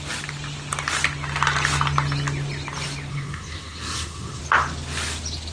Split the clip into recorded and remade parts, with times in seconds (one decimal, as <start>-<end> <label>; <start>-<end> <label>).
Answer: 0.0-3.1 recorded; 3.1-4.4 remade; 4.4-5.5 recorded